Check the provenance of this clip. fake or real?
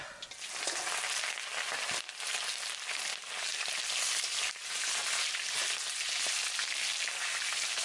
real